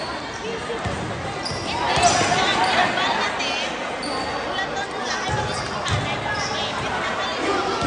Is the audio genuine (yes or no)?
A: yes